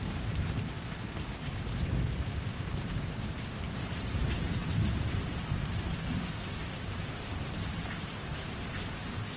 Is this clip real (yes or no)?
no